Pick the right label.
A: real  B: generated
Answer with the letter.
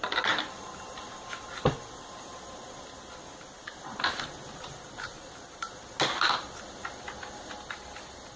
A